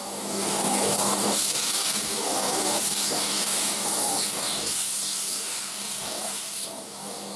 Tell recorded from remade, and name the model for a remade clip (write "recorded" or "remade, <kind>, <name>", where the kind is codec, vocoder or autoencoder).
remade, codec, DAC